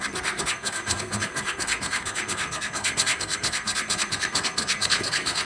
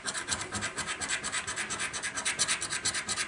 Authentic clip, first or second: second